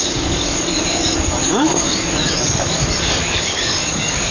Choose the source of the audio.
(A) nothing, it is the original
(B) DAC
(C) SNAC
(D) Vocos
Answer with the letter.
B